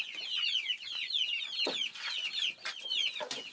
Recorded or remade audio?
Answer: remade